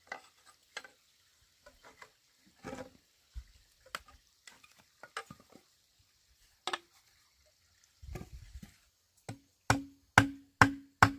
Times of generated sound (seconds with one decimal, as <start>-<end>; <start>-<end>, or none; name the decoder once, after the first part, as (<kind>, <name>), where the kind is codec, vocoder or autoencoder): none